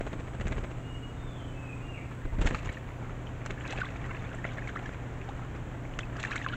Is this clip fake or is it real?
real